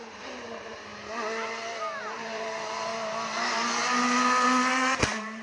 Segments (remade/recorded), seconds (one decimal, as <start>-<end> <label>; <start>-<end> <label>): 0.0-0.9 remade; 0.9-2.0 recorded; 2.0-2.9 remade; 2.9-4.7 recorded; 4.7-5.4 remade